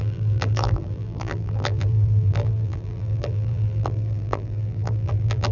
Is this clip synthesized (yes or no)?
yes